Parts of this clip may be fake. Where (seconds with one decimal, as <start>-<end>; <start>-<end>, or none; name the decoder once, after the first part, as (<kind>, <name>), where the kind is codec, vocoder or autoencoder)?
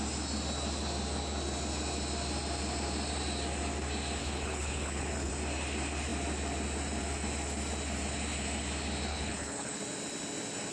4.2-5.3 (codec, HILCodec); 9.1-9.8